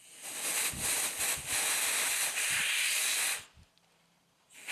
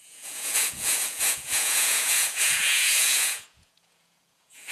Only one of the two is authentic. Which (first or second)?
first